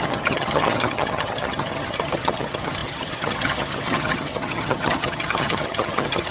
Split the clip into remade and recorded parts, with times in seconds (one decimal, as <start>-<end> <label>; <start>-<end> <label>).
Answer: 0.0-6.3 remade